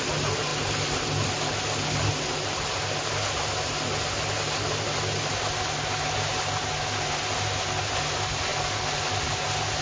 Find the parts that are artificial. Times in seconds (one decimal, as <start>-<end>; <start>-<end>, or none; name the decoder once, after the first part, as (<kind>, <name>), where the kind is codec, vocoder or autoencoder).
none